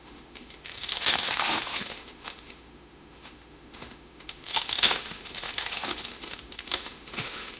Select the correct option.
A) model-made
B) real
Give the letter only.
A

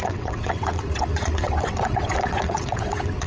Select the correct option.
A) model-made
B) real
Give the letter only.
A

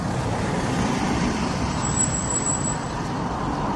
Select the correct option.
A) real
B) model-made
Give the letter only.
A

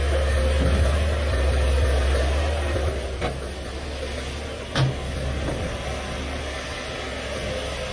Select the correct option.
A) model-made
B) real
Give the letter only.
B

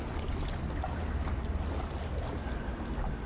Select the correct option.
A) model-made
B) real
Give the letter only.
B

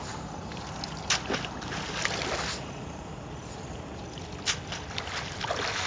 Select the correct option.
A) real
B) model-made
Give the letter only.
A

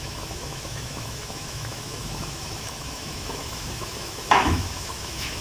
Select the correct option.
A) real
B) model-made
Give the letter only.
B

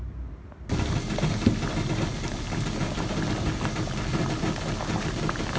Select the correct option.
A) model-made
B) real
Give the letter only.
B